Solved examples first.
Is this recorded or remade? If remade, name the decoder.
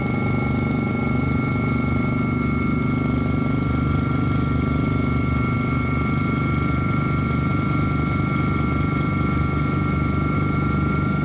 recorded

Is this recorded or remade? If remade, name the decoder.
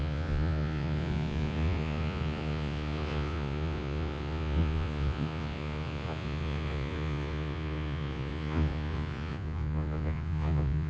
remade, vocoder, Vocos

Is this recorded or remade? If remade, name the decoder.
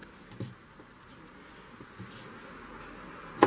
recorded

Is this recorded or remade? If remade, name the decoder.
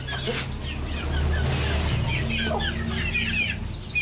recorded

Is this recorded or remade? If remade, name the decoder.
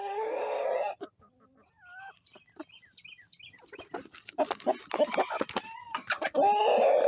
recorded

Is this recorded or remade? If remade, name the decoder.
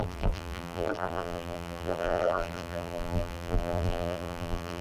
remade, vocoder, BigVGAN v2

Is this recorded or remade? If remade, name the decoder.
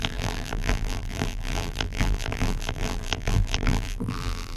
remade, vocoder, BigVGAN v2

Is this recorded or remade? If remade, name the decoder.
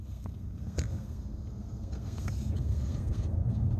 remade, codec, SNAC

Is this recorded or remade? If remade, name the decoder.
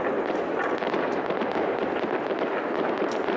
recorded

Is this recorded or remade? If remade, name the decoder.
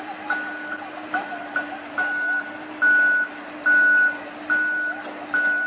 recorded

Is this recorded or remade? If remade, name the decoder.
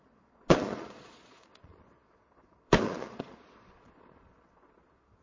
remade, vocoder, Vocos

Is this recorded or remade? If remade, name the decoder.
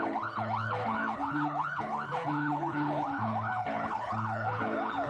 remade, codec, HILCodec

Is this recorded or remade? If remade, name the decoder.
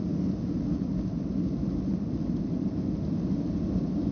recorded